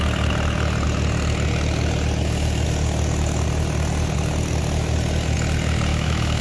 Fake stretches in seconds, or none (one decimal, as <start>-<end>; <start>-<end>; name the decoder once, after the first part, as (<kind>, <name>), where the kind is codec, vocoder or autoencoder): 5.9-6.4 (autoencoder, DAC-VAE)